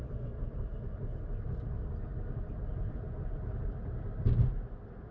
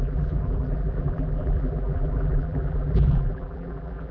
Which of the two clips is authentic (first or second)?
first